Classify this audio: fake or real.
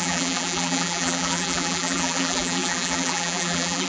fake